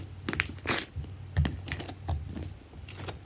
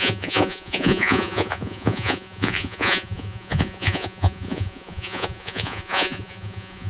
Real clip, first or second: first